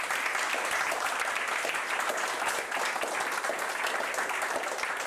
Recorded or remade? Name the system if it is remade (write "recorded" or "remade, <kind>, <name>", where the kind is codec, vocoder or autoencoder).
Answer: recorded